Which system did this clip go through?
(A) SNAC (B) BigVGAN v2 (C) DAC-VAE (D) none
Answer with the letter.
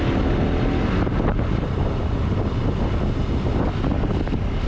D